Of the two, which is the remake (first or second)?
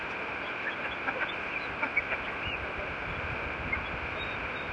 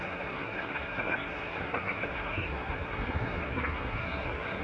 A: second